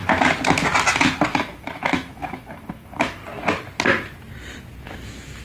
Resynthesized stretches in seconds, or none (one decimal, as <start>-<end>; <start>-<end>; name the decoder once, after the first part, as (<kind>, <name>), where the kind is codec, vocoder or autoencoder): 1.3-3.2 (autoencoder, DAC-VAE); 4.8-5.4